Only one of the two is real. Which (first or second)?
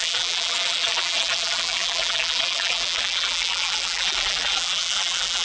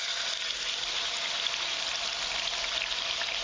second